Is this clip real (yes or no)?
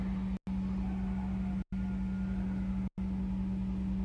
yes